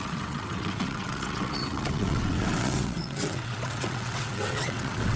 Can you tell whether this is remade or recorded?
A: remade